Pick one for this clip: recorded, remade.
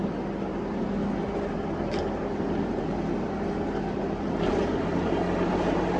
recorded